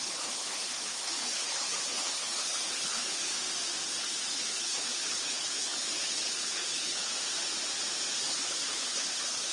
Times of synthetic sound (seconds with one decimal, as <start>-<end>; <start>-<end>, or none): 0.0-3.3; 3.9-7.1; 8.2-9.5